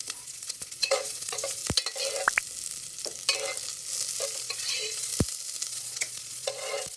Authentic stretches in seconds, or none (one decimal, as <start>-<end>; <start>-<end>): 1.6-4.4; 5.1-5.7